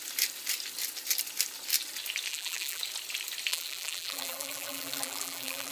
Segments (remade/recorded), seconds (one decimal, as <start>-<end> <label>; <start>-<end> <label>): 0.0-2.3 recorded; 2.3-2.8 remade; 2.8-3.5 recorded; 3.5-5.7 remade